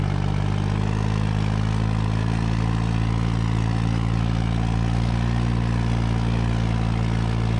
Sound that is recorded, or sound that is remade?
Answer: recorded